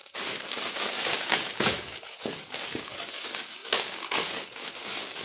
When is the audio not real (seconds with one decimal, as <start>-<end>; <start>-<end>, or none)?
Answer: 0.0-5.2